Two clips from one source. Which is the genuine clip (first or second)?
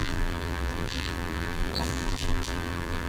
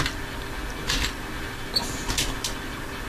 second